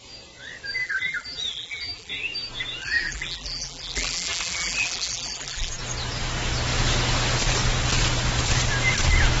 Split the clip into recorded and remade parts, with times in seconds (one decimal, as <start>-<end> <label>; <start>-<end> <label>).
0.0-0.8 recorded; 0.8-2.1 remade; 2.1-2.8 recorded; 2.8-5.7 remade; 5.7-9.4 recorded